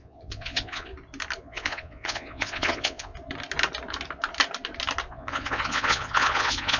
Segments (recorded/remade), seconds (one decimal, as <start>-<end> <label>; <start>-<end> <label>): 0.0-0.9 remade; 0.9-1.4 recorded; 1.4-3.1 remade; 3.1-5.1 recorded; 5.1-6.8 remade